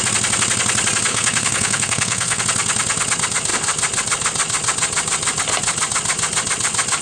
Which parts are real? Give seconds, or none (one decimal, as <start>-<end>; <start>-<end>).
0.0-1.1; 2.4-7.0